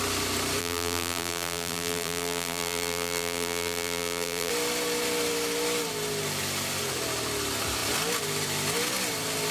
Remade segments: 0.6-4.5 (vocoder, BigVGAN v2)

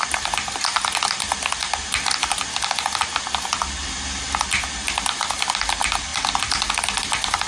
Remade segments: 0.0-2.2 (vocoder, BigVGAN v2); 3.2-3.8; 4.4-7.5

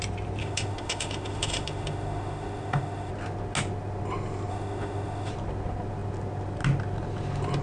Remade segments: 0.4-3.1 (autoencoder, DAC-VAE); 4.5-5.3

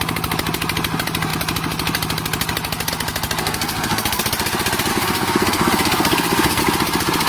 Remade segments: 3.4-4.2 (codec, SNAC); 4.9-6.6

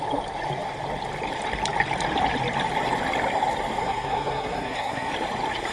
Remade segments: 3.8-5.1 (codec, SNAC)

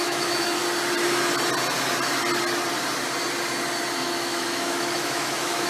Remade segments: 0.0-0.6 (autoencoder, DAC-VAE); 4.0-5.7